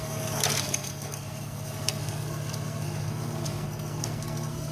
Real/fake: fake